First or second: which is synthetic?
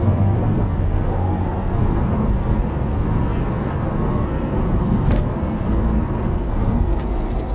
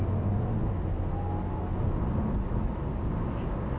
first